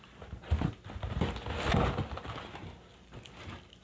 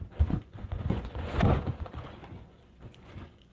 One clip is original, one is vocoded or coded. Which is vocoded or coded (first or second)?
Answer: second